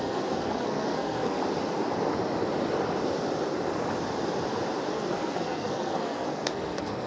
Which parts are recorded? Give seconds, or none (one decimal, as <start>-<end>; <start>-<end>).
1.4-4.9